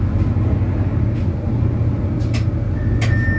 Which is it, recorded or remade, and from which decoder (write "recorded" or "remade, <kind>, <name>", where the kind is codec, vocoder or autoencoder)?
recorded